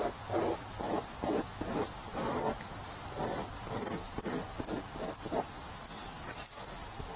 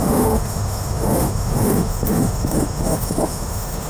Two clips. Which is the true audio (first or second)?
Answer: first